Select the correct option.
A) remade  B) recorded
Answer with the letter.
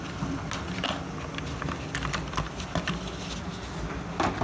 B